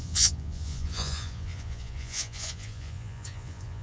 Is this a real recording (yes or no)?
no